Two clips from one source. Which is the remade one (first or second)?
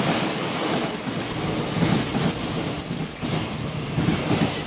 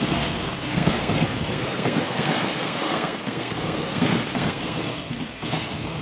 second